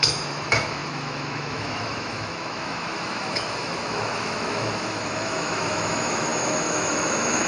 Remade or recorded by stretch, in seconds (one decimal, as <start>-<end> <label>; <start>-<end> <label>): 0.0-7.5 remade